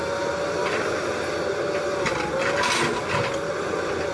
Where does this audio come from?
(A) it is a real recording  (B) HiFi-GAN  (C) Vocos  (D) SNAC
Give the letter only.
A